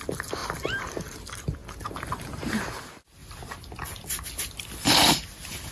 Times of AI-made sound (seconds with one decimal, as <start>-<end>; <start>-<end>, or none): none